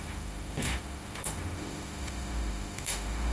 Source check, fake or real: fake